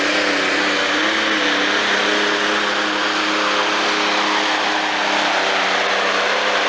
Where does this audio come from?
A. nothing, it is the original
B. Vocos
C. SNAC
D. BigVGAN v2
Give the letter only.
A